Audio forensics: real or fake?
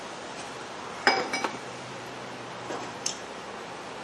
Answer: fake